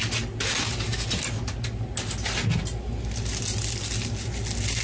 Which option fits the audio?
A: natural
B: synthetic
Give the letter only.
A